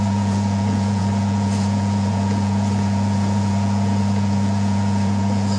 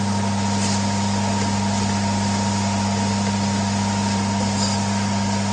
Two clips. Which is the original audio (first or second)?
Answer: second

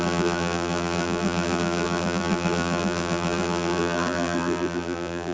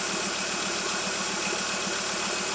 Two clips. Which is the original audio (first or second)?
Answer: second